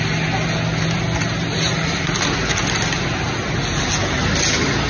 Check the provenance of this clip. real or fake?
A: real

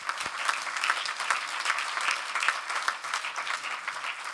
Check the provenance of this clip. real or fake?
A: real